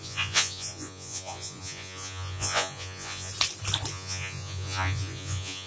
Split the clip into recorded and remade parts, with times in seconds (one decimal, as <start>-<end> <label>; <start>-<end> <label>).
0.0-3.3 remade; 3.3-3.9 recorded; 3.9-5.7 remade